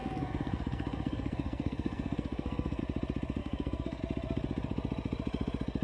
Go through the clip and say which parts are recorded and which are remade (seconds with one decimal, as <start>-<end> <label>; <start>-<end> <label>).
0.0-2.8 remade; 2.8-3.4 recorded; 3.4-4.0 remade; 4.0-5.8 recorded